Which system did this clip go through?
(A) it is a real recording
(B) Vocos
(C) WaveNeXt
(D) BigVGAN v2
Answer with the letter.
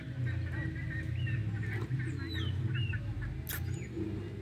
A